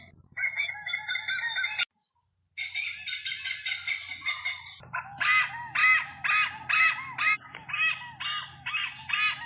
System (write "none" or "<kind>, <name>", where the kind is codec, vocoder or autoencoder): none